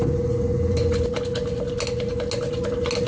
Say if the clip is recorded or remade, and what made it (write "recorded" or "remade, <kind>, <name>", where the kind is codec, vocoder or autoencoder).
recorded